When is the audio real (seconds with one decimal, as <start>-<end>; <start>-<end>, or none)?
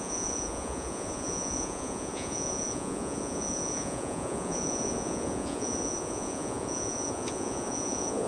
none